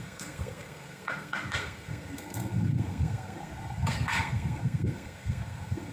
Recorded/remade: remade